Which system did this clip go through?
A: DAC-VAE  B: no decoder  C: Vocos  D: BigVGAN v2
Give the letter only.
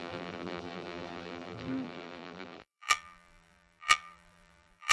D